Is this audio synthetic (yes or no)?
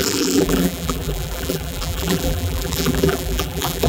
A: yes